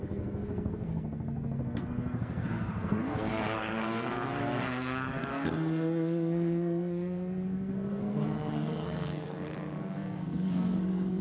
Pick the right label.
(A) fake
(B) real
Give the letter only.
A